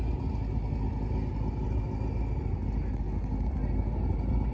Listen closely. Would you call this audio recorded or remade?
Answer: recorded